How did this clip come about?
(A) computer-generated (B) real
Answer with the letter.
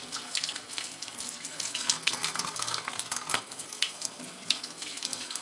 A